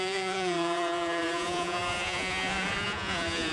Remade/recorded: remade